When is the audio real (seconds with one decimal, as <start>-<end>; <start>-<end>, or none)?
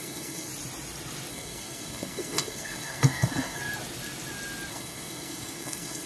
0.5-1.3; 3.6-4.7